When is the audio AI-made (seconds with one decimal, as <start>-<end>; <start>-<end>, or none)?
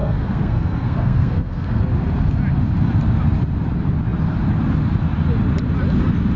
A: 0.0-1.8